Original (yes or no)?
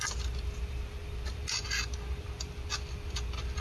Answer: yes